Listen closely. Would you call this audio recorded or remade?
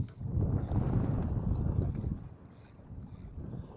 recorded